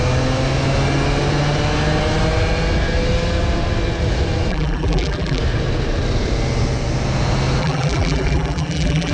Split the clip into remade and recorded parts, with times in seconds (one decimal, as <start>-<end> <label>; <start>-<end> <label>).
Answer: 0.0-4.5 recorded; 4.5-5.4 remade; 5.4-7.6 recorded; 7.6-9.1 remade